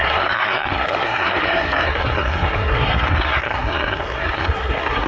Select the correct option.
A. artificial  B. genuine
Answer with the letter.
A